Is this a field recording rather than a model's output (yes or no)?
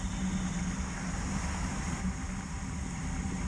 yes